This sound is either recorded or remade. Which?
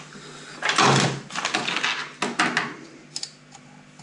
recorded